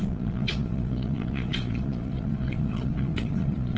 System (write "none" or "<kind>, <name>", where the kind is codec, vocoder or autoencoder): vocoder, Vocos